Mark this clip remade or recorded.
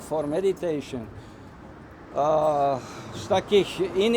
recorded